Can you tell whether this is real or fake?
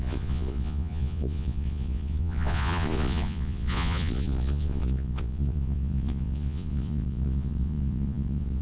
fake